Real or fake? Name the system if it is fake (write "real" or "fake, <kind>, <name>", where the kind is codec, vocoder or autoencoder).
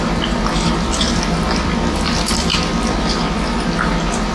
real